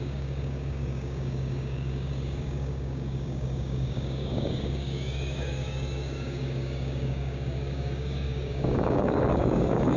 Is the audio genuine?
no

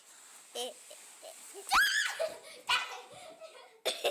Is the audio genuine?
yes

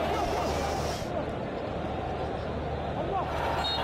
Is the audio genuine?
yes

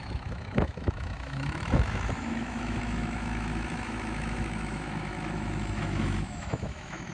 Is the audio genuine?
no